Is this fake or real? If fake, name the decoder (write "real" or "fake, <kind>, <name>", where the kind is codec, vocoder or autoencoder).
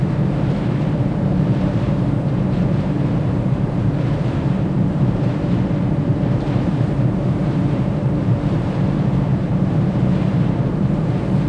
fake, vocoder, BigVGAN v2